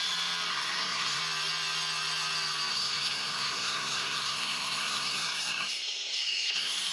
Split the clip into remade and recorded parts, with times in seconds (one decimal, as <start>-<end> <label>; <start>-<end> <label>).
0.0-0.5 recorded; 0.5-1.2 remade; 1.2-2.7 recorded; 2.7-6.9 remade